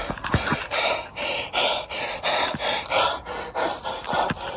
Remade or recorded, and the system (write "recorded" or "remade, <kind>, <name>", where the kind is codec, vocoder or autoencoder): recorded